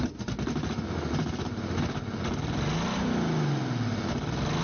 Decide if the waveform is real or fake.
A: real